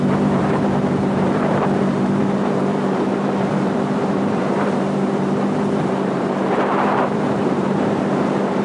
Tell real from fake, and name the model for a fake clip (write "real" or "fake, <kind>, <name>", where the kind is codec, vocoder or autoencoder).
fake, vocoder, BigVGAN v2